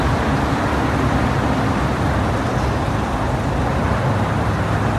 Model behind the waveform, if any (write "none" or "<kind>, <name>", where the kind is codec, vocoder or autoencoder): none